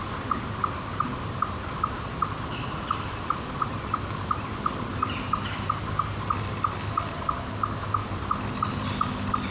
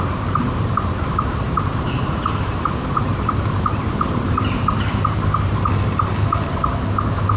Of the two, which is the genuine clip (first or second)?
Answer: first